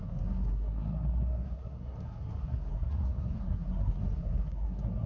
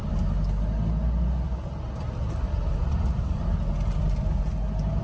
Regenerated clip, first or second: first